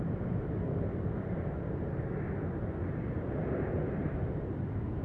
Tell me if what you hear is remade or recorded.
recorded